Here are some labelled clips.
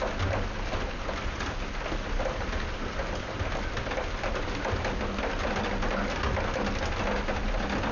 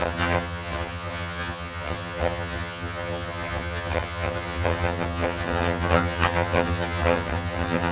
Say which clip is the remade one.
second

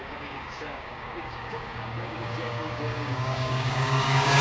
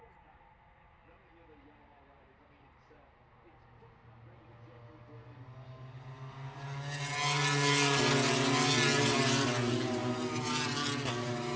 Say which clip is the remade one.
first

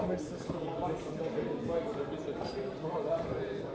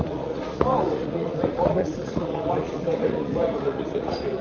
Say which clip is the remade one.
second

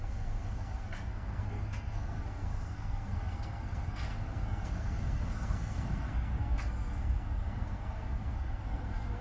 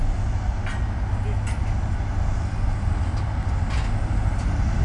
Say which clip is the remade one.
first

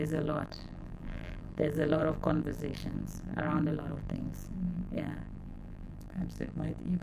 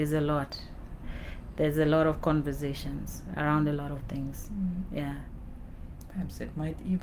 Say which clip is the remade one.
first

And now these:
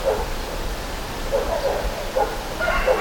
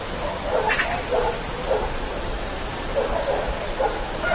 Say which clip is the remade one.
second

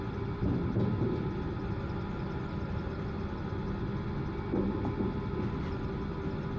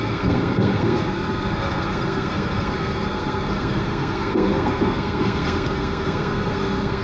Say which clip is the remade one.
second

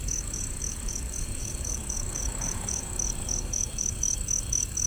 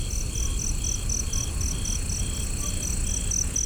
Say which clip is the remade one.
first